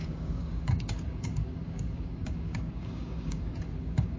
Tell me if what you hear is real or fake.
fake